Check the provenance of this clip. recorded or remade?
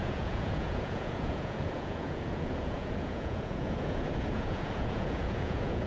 remade